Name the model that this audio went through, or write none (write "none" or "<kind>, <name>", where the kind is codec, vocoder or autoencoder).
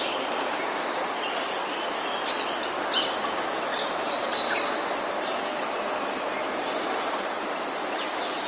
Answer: none